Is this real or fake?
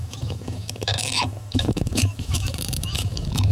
fake